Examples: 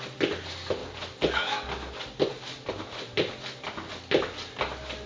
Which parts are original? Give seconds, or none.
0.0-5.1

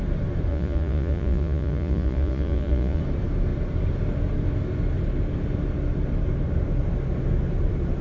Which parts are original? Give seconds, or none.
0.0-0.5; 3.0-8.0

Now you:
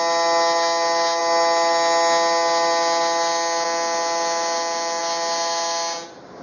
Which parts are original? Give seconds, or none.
0.0-6.4

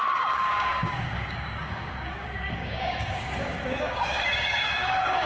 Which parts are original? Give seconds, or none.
none